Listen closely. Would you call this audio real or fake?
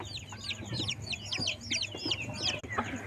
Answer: real